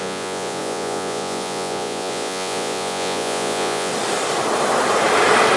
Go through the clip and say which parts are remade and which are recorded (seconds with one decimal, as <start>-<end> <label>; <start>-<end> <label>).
0.0-3.9 remade; 3.9-5.6 recorded